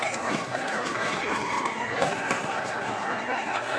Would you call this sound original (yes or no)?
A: no